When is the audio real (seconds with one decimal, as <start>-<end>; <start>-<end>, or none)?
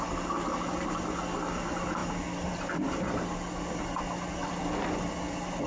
0.0-5.7